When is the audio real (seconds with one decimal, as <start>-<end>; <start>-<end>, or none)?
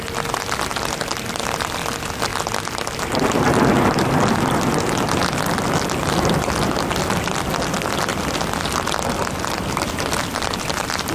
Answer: 0.0-11.1